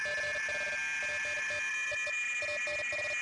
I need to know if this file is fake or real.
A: real